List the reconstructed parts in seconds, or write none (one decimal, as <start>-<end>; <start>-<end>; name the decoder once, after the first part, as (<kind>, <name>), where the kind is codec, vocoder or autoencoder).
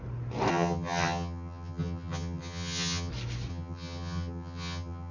0.5-3.1 (vocoder, HiFi-GAN); 3.5-5.1